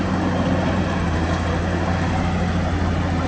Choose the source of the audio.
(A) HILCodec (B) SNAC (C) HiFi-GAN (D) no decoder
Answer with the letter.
D